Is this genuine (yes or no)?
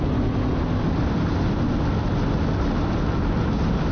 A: yes